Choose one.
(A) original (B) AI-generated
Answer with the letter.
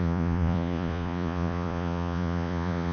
B